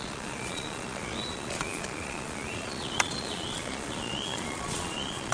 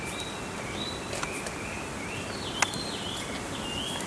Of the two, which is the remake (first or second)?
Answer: first